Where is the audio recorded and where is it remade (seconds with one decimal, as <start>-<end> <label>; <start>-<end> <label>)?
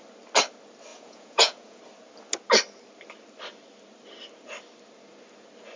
0.0-0.9 recorded; 0.9-1.8 remade; 1.8-5.8 recorded